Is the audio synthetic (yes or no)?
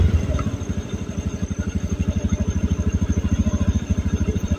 yes